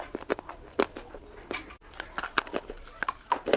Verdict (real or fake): real